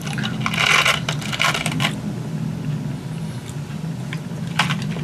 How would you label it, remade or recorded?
recorded